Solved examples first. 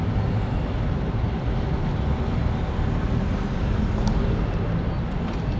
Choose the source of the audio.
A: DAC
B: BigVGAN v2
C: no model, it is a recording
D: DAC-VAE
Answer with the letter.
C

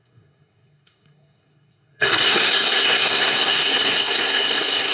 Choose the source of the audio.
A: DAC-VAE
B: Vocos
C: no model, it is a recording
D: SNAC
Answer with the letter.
D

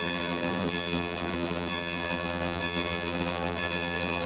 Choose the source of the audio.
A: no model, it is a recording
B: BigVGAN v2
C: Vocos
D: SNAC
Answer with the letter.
B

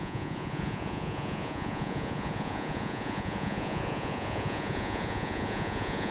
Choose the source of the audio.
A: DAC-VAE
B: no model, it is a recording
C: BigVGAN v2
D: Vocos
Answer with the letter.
D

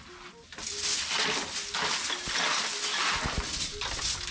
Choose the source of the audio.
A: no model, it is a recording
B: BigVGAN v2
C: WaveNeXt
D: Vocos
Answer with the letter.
A